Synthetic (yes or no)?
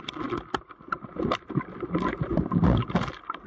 no